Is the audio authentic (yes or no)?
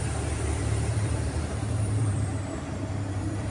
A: no